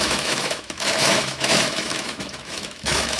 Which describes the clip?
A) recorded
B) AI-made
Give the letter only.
B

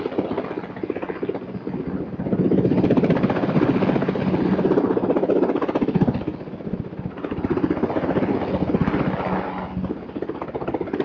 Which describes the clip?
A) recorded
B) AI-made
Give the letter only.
A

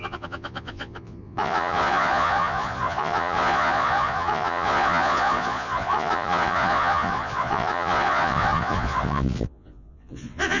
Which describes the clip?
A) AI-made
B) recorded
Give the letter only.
A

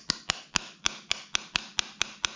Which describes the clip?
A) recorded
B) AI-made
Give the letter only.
A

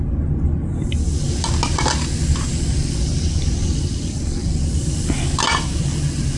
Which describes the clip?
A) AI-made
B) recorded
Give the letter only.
B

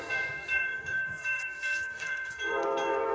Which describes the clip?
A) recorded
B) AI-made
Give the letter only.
B